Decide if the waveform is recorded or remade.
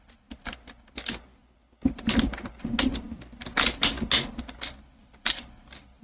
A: recorded